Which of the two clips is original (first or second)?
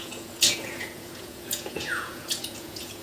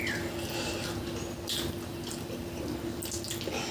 second